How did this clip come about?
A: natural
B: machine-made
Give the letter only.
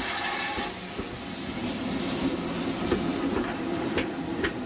A